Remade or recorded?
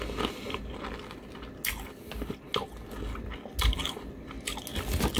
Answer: recorded